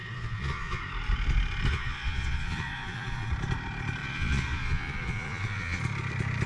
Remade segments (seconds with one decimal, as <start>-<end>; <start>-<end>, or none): 0.0-0.8; 1.7-3.3; 4.0-5.8